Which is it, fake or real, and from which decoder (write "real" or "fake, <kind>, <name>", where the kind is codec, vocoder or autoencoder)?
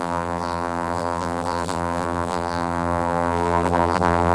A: fake, vocoder, BigVGAN v2